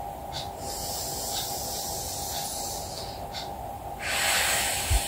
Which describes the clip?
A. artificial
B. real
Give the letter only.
B